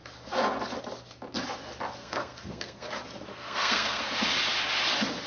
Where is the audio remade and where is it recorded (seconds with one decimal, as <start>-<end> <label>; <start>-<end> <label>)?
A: 0.0-2.0 recorded; 2.0-2.9 remade; 2.9-3.3 recorded; 3.3-4.0 remade; 4.0-5.3 recorded